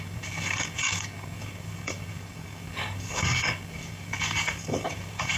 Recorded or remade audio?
remade